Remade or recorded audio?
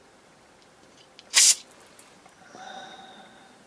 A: recorded